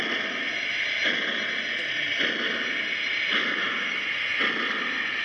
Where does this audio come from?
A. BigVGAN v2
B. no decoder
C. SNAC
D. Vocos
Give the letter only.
B